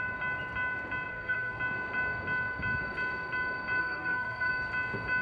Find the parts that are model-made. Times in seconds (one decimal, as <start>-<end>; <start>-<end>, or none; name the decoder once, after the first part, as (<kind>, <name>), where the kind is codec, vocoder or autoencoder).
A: 1.1-1.6 (codec, SNAC); 3.8-4.5